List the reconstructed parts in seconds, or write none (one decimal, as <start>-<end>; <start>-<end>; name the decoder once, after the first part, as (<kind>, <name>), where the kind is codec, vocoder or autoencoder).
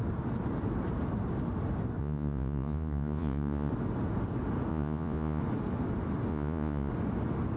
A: 2.0-3.7 (vocoder, Vocos); 4.7-5.4; 6.3-6.9